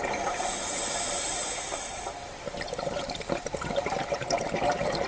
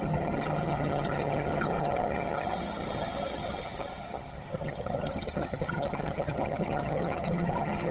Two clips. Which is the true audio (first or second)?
first